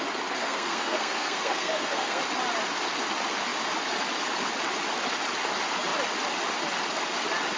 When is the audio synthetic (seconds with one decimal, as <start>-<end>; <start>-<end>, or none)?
0.4-2.2